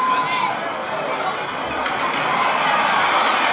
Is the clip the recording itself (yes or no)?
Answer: yes